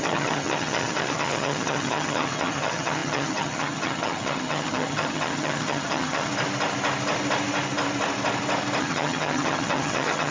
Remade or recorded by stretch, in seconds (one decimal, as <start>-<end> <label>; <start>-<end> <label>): 0.0-6.3 remade; 6.3-8.8 recorded; 8.8-10.3 remade